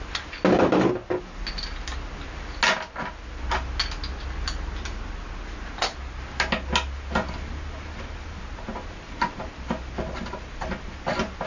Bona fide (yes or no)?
yes